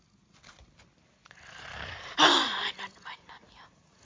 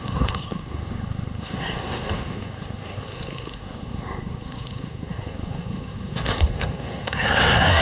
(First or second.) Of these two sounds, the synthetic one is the second